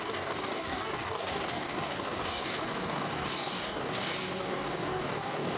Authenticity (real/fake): fake